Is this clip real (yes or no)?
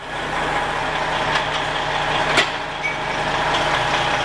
yes